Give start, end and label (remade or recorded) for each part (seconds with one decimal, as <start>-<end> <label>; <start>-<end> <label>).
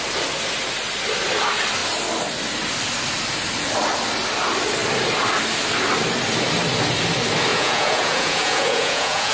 0.0-7.5 recorded; 7.5-9.3 remade